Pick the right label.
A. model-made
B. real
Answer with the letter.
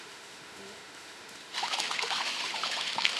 A